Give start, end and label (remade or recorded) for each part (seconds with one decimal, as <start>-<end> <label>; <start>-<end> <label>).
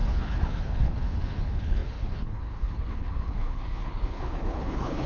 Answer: 0.0-5.1 remade